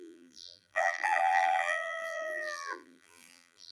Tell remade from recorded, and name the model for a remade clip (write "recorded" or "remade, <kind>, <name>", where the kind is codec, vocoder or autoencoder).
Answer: remade, vocoder, BigVGAN v2